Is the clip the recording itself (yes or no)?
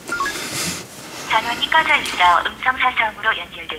no